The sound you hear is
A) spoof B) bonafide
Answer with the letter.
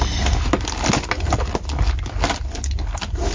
B